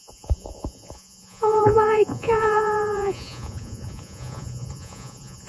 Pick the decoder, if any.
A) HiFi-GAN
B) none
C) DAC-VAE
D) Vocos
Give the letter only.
D